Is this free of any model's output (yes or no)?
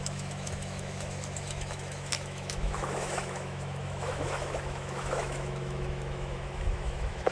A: no